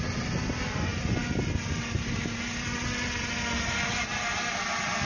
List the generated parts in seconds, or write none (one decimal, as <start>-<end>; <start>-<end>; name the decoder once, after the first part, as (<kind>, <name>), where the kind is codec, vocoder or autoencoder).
none